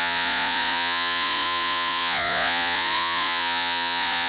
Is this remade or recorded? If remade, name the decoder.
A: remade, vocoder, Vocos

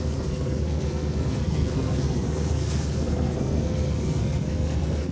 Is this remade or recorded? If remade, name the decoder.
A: remade, codec, SNAC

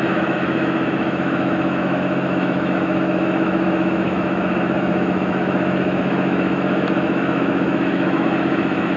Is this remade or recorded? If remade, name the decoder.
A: remade, autoencoder, DAC-VAE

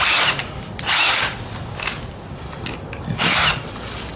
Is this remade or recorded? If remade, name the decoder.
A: recorded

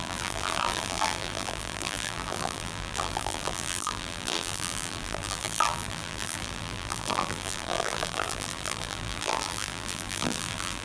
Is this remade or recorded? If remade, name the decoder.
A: remade, vocoder, BigVGAN v2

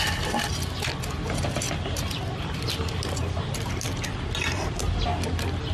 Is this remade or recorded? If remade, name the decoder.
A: recorded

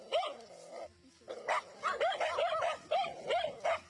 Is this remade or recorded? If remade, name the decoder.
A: recorded